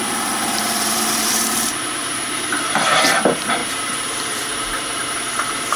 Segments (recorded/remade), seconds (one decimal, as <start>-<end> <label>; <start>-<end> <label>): 0.0-0.4 recorded; 0.4-3.2 remade; 3.2-3.6 recorded; 3.6-5.8 remade